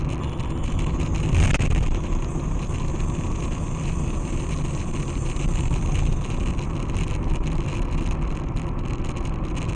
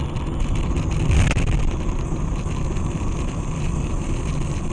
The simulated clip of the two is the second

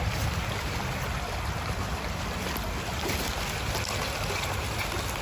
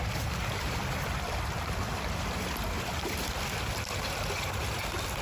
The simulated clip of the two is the second